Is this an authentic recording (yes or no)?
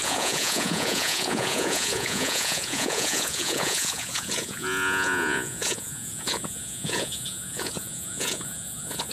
no